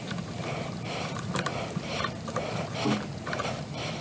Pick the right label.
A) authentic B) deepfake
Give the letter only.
B